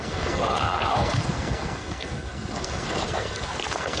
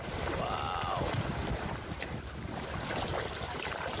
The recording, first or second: second